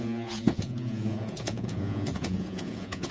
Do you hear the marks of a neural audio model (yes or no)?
yes